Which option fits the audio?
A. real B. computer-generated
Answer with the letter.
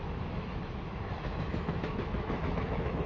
B